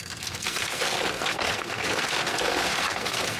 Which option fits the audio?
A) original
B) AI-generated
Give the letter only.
B